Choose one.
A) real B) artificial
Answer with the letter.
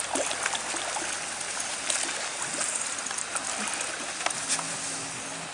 A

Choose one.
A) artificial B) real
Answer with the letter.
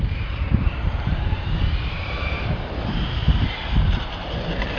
A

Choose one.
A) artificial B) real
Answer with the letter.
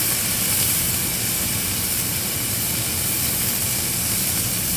B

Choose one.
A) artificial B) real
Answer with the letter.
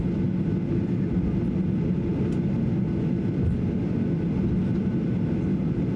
B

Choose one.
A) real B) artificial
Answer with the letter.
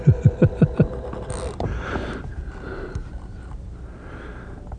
A